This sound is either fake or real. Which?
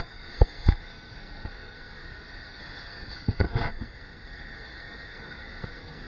fake